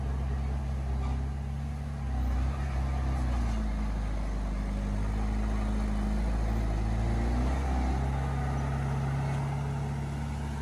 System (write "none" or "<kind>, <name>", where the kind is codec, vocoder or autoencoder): none